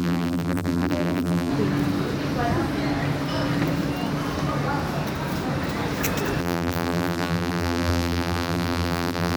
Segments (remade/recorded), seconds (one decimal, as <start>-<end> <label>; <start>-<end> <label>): 0.0-1.5 remade; 1.5-6.4 recorded; 6.4-9.4 remade